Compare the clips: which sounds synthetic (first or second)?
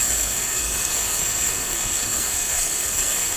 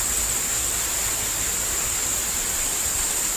first